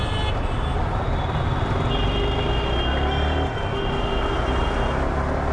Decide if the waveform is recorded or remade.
recorded